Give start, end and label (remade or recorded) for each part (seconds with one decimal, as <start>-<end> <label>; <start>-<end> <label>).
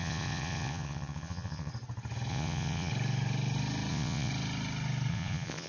0.0-1.7 remade; 1.7-2.3 recorded; 2.3-2.9 remade; 2.9-3.9 recorded; 3.9-4.3 remade; 4.3-5.1 recorded; 5.1-5.7 remade